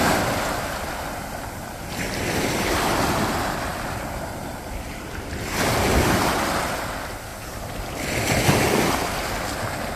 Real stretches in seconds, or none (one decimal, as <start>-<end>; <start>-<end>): 0.0-3.7; 4.9-7.3; 9.4-10.0